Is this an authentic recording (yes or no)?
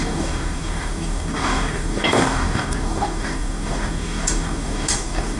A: no